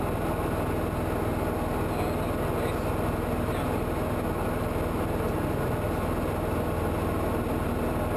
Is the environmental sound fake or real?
real